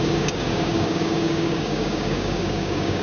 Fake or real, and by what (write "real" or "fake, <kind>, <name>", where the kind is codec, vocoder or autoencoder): fake, codec, DAC